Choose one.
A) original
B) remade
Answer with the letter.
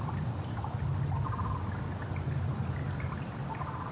A